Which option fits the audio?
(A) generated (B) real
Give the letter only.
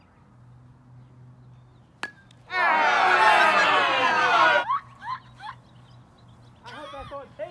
B